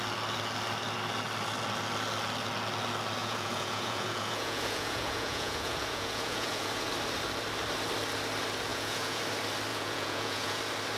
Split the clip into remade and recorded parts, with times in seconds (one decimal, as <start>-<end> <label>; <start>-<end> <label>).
0.0-3.2 recorded; 3.2-6.9 remade; 6.9-8.7 recorded; 8.7-9.2 remade; 9.2-9.7 recorded; 9.7-10.6 remade; 10.6-11.0 recorded